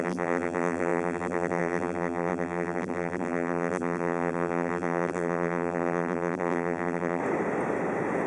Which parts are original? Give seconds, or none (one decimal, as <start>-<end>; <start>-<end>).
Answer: 7.2-8.3